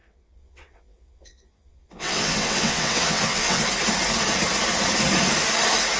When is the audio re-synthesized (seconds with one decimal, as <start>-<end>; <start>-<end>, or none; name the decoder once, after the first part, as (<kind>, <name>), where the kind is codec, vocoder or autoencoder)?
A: 0.0-3.6 (vocoder, WaveNeXt)